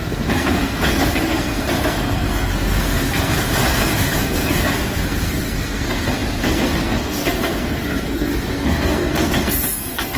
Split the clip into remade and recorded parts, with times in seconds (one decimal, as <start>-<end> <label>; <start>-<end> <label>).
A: 0.0-10.2 remade